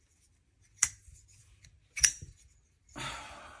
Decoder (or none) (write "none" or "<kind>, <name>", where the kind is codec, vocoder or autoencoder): vocoder, BigVGAN v2